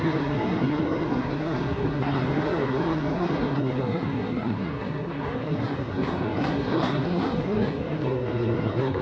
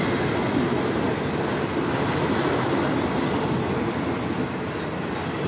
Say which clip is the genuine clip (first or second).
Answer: second